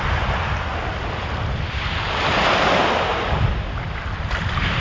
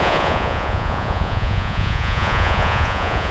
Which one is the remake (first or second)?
second